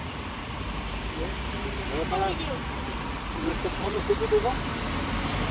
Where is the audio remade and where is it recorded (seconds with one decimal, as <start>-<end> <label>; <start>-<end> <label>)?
0.0-0.5 remade; 0.5-2.6 recorded; 2.6-4.2 remade; 4.2-5.5 recorded